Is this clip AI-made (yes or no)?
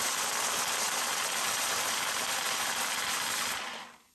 no